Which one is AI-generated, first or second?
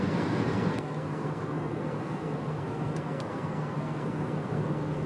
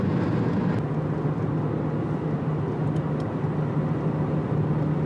first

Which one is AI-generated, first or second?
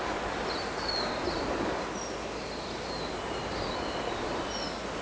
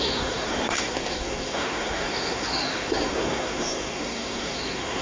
second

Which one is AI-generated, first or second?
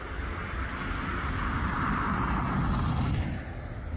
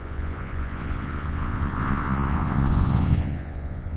second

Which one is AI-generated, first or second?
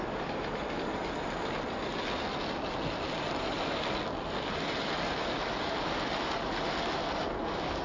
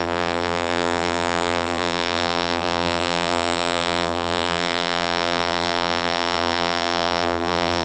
second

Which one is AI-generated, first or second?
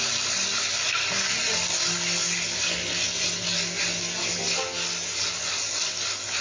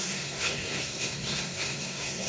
second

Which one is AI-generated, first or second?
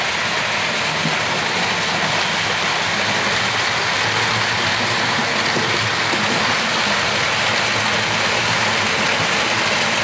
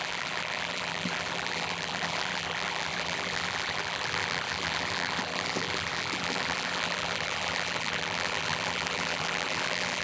second